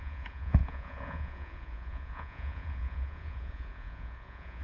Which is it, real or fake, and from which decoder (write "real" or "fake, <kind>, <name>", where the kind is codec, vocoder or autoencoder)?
fake, vocoder, Vocos